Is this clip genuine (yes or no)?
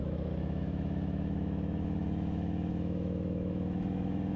no